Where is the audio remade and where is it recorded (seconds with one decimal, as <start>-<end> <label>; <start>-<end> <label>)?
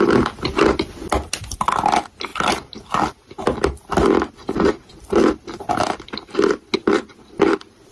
0.0-7.9 recorded